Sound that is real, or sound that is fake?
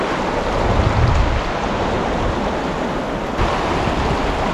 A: real